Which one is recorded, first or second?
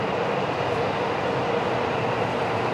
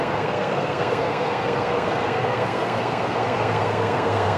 first